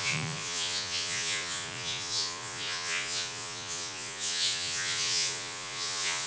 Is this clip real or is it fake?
fake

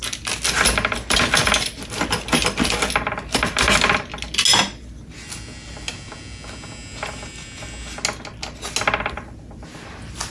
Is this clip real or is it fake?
real